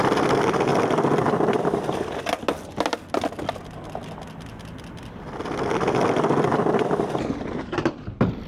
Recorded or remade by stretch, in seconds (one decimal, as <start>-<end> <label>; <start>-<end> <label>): 0.0-8.5 recorded